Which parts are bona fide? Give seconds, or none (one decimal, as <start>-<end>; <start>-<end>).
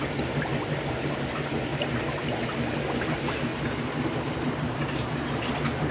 1.7-3.0; 3.5-4.4